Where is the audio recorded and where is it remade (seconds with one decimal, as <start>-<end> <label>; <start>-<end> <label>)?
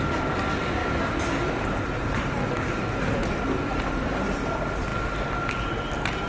0.0-6.3 recorded